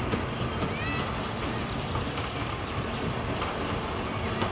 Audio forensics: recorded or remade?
recorded